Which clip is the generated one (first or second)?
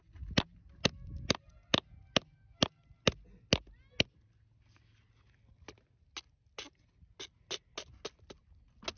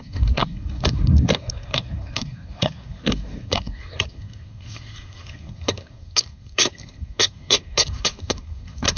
second